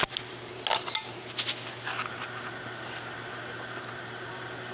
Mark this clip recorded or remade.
recorded